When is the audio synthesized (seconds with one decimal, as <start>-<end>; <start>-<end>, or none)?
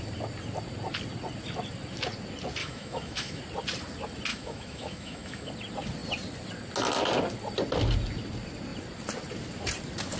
2.6-3.4; 4.3-5.5